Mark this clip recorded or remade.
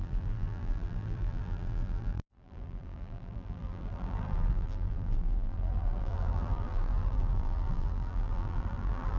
remade